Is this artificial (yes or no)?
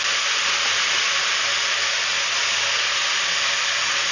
no